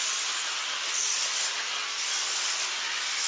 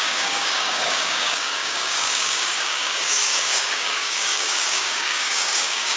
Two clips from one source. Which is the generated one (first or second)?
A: second